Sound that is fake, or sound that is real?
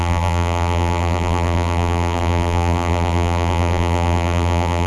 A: fake